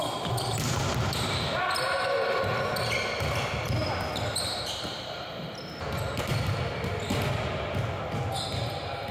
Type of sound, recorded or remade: recorded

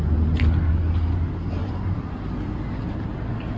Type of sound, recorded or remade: recorded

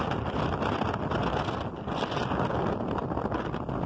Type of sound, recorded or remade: recorded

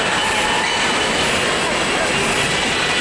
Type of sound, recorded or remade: recorded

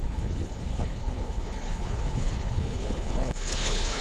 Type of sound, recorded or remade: remade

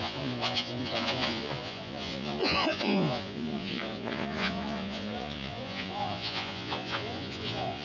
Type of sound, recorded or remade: remade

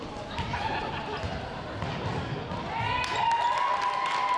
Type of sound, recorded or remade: recorded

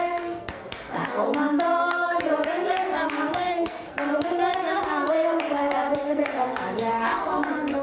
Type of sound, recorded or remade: remade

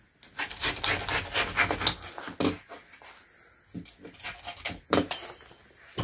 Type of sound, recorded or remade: recorded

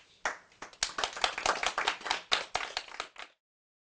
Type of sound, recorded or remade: recorded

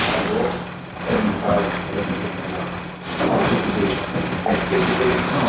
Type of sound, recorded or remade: recorded